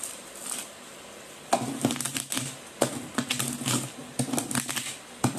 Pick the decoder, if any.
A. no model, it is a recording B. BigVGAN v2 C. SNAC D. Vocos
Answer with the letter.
A